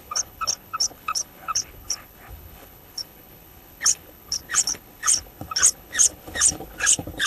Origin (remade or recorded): remade